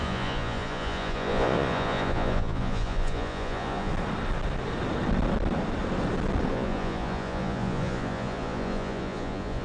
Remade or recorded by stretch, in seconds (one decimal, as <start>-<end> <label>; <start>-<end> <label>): 0.0-3.9 remade; 3.9-6.5 recorded; 6.5-9.6 remade